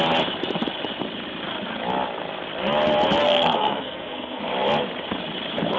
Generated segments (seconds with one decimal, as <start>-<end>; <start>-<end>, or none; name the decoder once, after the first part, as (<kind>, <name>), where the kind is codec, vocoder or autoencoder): 3.2-4.4 (codec, SNAC)